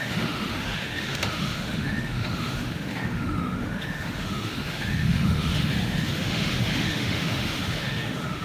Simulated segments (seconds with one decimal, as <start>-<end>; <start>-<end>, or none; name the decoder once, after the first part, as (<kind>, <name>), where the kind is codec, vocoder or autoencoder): 0.0-8.4 (autoencoder, DAC-VAE)